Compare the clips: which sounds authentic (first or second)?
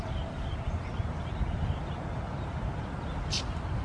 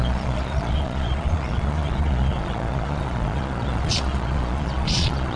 first